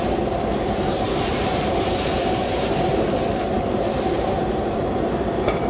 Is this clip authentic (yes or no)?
no